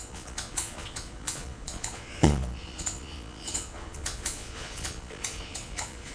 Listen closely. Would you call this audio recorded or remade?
remade